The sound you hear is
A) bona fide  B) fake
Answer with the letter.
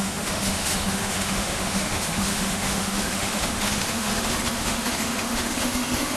B